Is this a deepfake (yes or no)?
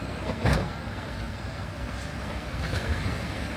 yes